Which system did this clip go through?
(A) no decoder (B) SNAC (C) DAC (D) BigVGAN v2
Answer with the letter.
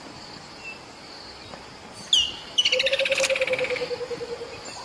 A